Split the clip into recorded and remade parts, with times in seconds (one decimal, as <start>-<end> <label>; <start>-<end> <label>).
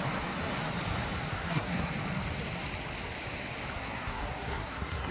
0.0-1.4 recorded; 1.4-1.9 remade; 1.9-3.8 recorded; 3.8-5.1 remade